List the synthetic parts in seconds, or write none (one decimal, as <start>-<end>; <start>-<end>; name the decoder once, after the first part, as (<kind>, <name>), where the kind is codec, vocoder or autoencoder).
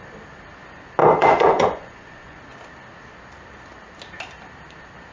1.0-2.4 (vocoder, Vocos)